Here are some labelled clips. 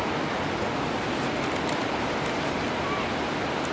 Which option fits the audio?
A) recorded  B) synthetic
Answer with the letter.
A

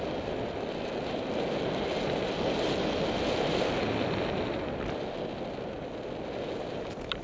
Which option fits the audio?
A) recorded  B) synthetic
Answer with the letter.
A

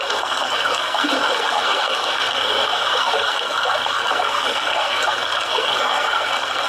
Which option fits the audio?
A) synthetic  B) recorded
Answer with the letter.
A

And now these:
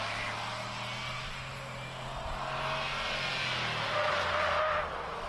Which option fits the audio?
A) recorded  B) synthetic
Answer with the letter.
A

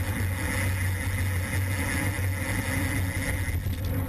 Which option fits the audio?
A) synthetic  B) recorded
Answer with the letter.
B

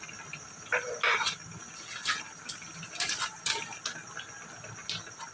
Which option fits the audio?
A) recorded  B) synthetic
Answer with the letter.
A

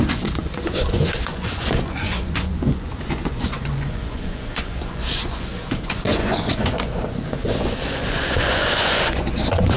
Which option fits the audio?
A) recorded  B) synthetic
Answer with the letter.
B